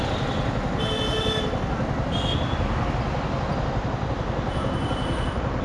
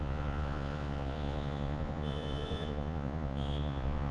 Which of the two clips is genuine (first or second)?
first